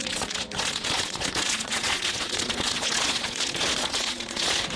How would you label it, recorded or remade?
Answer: remade